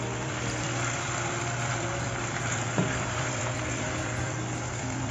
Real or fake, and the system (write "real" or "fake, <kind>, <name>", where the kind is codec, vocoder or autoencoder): fake, vocoder, BigVGAN v2